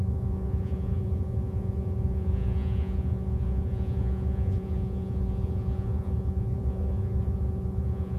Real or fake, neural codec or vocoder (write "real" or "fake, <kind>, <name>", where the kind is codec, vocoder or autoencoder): fake, vocoder, Vocos